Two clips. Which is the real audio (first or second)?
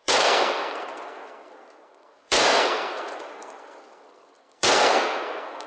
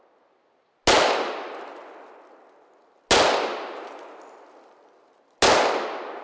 second